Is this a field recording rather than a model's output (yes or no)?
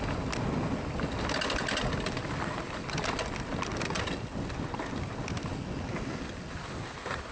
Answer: yes